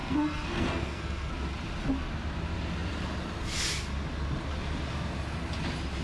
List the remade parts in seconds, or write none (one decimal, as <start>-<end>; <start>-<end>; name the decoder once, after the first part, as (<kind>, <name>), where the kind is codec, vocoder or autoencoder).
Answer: 0.0-1.3 (codec, SNAC)